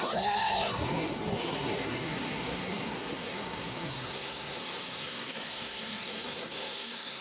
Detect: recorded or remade remade